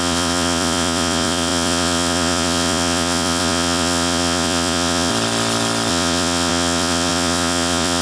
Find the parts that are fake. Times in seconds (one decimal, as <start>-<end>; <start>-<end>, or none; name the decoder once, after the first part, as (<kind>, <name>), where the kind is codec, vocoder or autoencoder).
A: 0.0-5.1 (vocoder, Vocos); 5.9-8.0